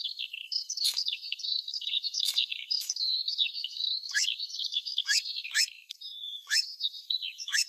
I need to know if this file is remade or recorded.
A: remade